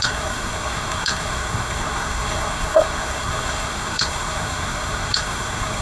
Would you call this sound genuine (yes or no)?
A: no